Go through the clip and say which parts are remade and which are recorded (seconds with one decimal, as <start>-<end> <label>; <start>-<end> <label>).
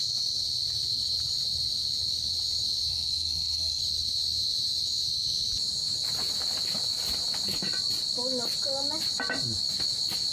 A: 0.0-2.9 recorded; 2.9-3.8 remade; 3.8-10.3 recorded